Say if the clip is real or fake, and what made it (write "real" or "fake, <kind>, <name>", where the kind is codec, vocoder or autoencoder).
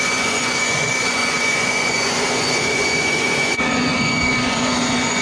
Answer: fake, vocoder, Vocos